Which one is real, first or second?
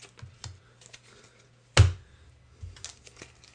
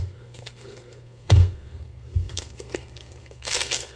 first